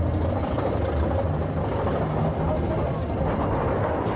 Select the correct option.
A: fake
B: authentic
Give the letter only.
B